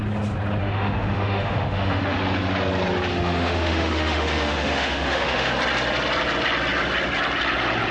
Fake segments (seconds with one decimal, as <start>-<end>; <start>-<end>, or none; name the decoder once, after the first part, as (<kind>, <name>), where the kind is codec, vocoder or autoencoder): 0.6-2.2 (autoencoder, DAC-VAE); 3.1-5.5